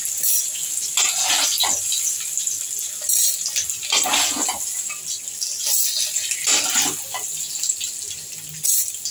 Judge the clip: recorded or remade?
recorded